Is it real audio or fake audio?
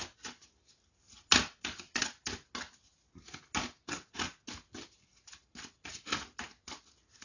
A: real